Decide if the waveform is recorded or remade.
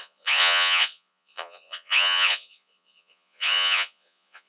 remade